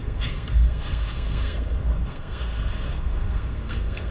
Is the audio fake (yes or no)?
yes